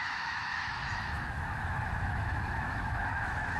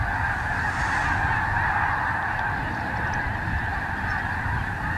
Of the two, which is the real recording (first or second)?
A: second